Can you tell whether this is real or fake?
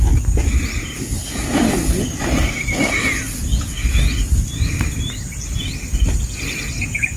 real